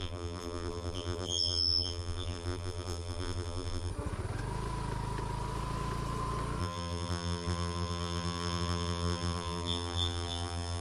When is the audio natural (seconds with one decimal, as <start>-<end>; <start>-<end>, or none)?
3.9-6.6